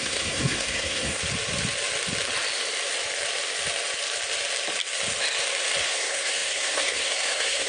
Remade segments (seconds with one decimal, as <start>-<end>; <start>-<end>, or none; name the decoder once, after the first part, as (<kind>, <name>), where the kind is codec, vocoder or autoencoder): 0.0-1.2 (codec, SNAC); 5.8-7.7